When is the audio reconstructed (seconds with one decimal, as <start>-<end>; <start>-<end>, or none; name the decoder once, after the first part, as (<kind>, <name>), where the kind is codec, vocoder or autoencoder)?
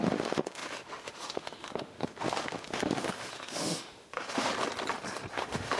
0.0-4.5 (autoencoder, DAC-VAE); 5.3-5.8